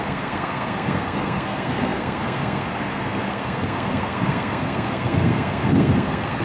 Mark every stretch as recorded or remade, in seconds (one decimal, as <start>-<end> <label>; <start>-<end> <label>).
0.0-6.4 remade